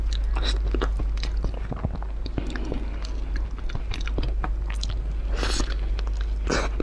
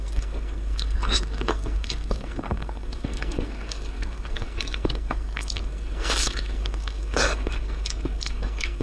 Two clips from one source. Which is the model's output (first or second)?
second